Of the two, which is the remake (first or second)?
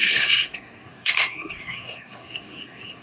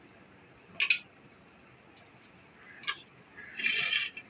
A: first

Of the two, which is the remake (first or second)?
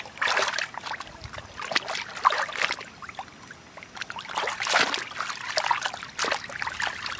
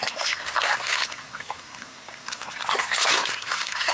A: second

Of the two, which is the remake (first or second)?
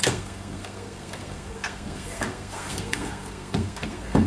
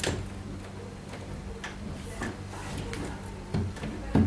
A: first